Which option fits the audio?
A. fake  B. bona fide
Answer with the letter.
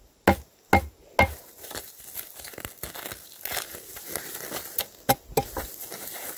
B